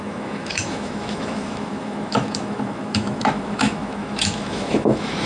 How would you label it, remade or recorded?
remade